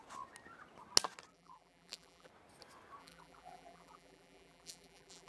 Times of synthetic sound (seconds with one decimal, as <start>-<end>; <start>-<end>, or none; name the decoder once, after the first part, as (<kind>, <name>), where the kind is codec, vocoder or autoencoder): 1.3-2.3 (vocoder, BigVGAN v2); 3.0-5.3